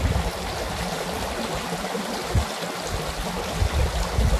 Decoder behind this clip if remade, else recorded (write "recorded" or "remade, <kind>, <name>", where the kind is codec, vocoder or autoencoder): recorded